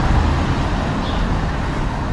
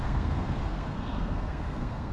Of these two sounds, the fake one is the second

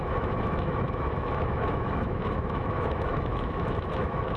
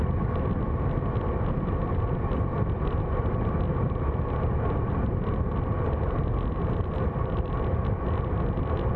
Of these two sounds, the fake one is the first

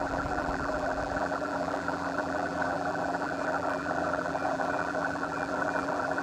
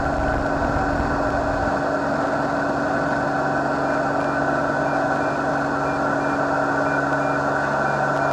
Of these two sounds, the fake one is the first